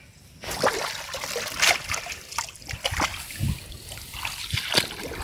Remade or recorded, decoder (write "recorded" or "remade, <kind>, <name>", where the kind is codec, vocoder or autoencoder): recorded